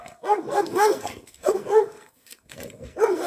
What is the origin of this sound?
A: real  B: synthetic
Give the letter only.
B